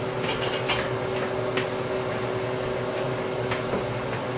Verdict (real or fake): real